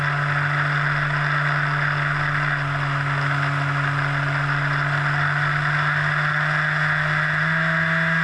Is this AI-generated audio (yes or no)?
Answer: no